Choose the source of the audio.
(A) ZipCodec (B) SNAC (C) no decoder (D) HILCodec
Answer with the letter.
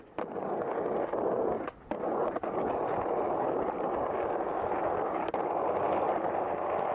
C